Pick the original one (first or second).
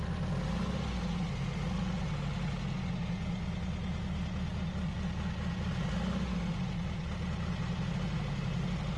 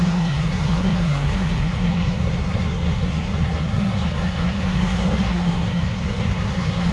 first